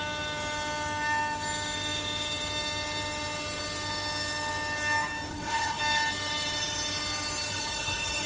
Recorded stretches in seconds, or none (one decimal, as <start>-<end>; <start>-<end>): 0.0-5.3; 5.8-7.5